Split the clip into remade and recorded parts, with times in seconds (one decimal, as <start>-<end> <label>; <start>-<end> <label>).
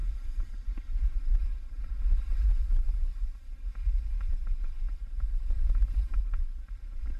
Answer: 0.0-7.2 remade